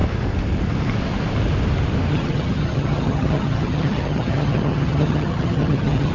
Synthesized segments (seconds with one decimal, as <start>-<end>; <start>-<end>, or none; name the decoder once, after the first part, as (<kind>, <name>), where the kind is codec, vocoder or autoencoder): 2.1-6.1 (vocoder, HiFi-GAN)